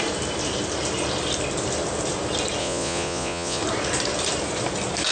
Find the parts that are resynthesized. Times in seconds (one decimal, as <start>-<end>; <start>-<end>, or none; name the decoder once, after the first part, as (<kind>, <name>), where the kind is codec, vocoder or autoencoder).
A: 2.6-3.6 (vocoder, Vocos)